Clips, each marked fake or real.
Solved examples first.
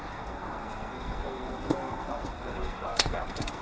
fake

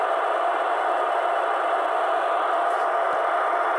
real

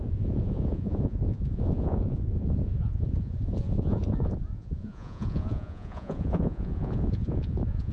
fake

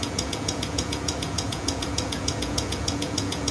fake